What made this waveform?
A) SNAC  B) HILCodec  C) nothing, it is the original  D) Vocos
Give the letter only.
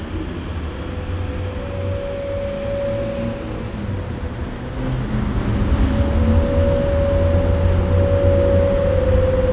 C